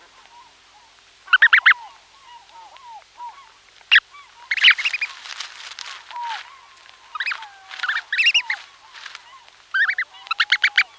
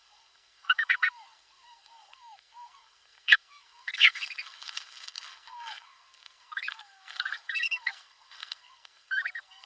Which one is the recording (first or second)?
first